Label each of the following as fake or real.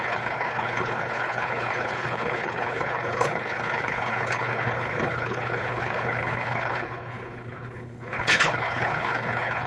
fake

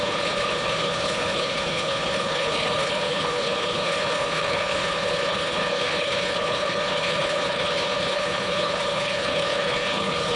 fake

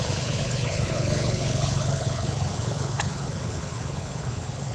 fake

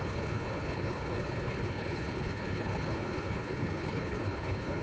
fake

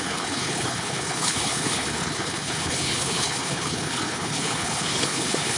fake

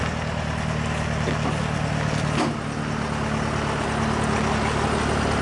real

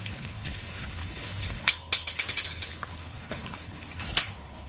fake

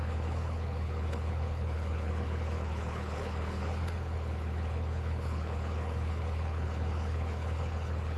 fake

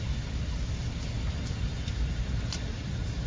real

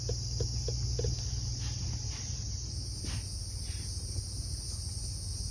real